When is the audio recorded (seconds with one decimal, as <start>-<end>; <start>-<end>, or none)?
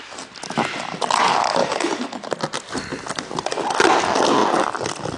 0.0-1.6; 2.3-5.2